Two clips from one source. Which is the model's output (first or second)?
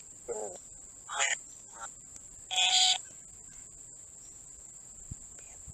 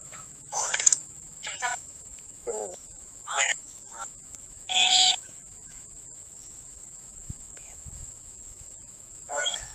second